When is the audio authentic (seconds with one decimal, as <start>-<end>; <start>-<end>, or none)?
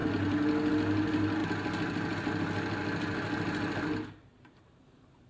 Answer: 0.0-5.3